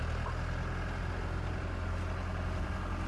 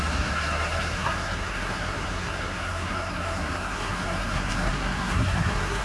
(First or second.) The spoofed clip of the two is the second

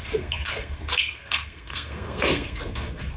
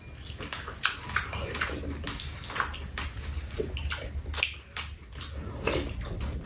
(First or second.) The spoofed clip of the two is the first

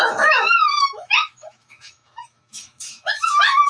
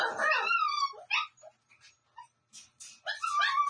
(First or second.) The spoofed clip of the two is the first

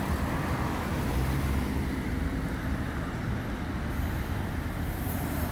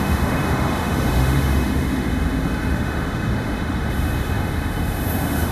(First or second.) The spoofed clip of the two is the second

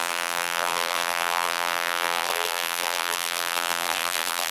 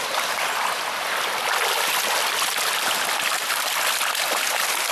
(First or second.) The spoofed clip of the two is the first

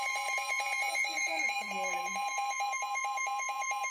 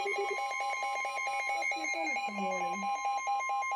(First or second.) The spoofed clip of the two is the first